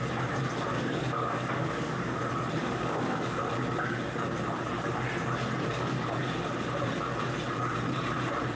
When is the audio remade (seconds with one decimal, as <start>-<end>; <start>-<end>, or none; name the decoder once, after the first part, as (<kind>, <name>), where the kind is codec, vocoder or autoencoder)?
0.7-2.2 (codec, DAC); 2.6-3.4